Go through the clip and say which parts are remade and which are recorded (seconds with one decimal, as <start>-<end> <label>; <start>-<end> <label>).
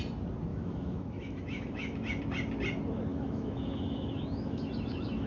0.0-0.5 recorded; 0.5-2.2 remade; 2.2-3.1 recorded; 3.1-5.3 remade